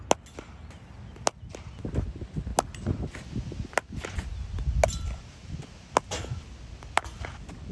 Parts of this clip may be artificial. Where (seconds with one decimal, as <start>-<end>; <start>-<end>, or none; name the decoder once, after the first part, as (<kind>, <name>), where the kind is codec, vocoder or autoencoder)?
none